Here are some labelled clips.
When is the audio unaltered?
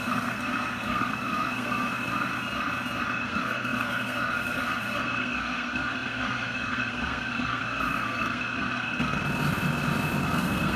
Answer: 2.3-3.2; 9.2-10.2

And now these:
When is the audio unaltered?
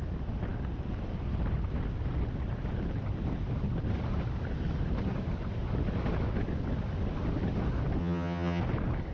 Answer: 0.0-8.0; 8.6-9.1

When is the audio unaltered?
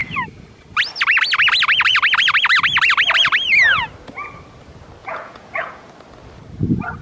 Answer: 0.0-5.0; 5.9-7.0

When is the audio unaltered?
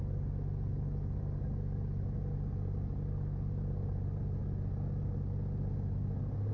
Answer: 0.0-6.5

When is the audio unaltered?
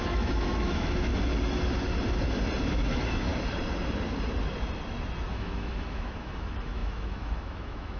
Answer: 1.1-2.7; 3.3-5.3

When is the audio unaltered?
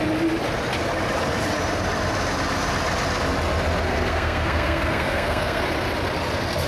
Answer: 0.0-3.9; 5.6-6.7